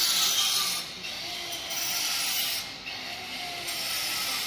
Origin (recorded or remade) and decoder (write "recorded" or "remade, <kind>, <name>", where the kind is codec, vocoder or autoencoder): recorded